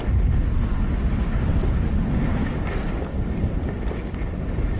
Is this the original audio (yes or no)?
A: yes